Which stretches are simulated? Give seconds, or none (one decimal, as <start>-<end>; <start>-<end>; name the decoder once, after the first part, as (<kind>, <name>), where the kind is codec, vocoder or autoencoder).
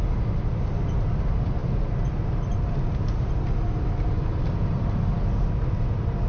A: none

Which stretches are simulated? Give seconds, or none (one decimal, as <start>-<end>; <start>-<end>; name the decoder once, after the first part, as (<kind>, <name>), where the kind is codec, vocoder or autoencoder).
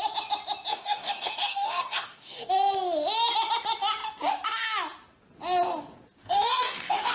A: 0.7-2.5 (codec, DAC); 6.2-7.1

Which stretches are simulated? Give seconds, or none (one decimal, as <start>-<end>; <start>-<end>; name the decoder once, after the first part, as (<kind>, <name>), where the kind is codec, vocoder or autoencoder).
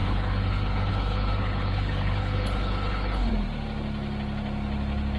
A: 0.0-3.3 (codec, HILCodec)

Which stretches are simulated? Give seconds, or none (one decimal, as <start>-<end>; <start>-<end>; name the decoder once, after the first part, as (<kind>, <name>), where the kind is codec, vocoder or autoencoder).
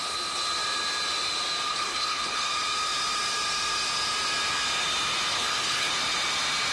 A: 1.7-2.5 (codec, HILCodec); 5.3-5.9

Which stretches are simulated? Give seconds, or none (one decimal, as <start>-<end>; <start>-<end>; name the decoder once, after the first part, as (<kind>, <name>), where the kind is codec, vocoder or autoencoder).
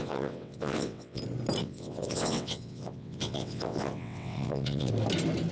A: 0.0-1.2 (vocoder, WaveNeXt); 1.6-4.9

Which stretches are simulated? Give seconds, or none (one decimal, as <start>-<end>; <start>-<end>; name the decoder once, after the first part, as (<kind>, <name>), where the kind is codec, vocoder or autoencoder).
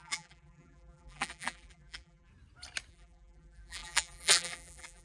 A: 0.0-2.3 (vocoder, BigVGAN v2); 2.9-5.0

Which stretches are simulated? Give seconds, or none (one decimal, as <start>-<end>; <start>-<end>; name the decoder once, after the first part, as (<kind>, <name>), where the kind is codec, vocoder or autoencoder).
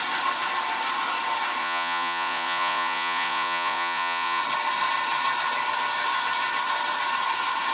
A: 1.6-4.4 (vocoder, Vocos)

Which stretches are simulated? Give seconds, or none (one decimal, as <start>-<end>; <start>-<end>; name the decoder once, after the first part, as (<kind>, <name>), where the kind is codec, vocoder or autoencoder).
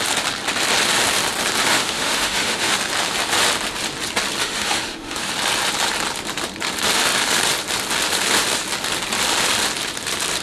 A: 1.7-2.7 (autoencoder, DAC-VAE); 4.4-5.3